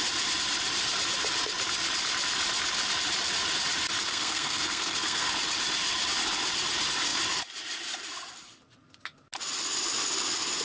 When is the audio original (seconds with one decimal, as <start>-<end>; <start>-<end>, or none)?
0.0-4.1; 5.3-10.6